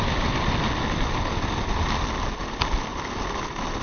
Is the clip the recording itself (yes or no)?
yes